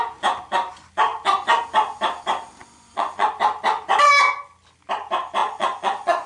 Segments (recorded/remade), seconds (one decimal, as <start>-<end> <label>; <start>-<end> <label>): 0.0-2.6 recorded; 2.6-3.3 remade; 3.3-5.4 recorded; 5.4-6.3 remade